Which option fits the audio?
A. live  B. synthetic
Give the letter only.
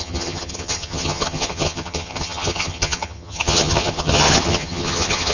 B